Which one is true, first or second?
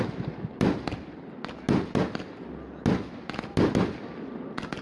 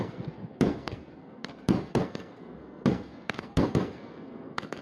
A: first